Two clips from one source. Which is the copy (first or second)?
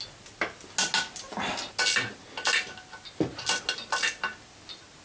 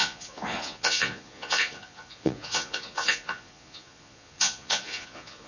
second